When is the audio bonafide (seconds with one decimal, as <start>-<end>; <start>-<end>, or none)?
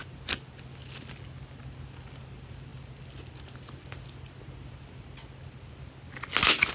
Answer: 0.0-6.7